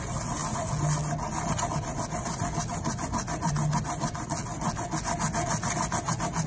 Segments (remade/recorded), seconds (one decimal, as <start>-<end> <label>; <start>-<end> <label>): 0.0-6.5 recorded